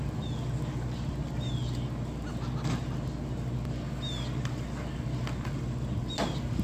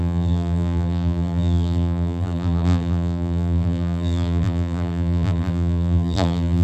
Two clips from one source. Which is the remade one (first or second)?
second